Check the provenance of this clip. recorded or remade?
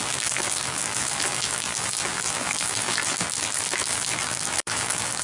remade